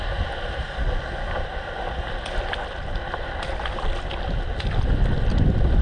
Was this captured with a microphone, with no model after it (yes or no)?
yes